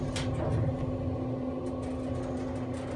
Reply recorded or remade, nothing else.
recorded